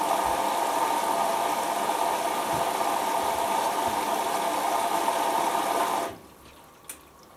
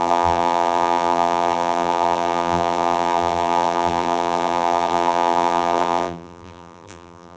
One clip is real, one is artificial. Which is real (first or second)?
first